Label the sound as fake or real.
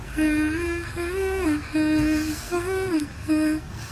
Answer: fake